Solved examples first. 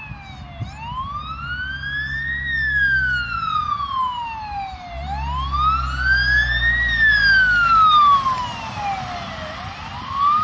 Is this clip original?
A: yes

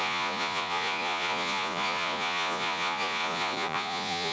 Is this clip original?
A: no